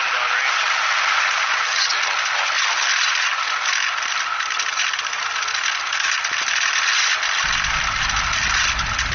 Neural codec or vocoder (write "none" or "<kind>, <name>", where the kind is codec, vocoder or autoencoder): none